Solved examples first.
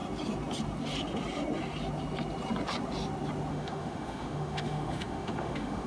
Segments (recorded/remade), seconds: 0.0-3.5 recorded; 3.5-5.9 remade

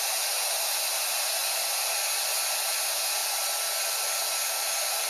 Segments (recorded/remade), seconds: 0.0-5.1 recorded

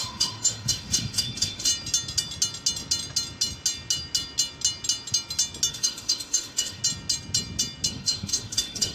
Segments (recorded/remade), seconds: 0.0-1.7 remade; 1.7-5.7 recorded; 5.7-6.8 remade; 6.8-7.9 recorded; 7.9-8.9 remade

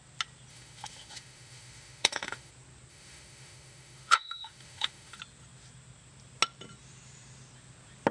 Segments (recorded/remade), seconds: 0.0-0.5 recorded; 0.5-2.5 remade; 2.5-2.9 recorded; 2.9-5.2 remade; 5.2-8.1 recorded

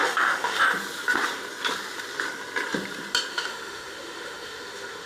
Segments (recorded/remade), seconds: 0.0-0.6 remade; 0.6-3.3 recorded; 3.3-5.1 remade